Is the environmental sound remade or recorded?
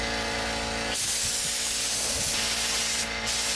recorded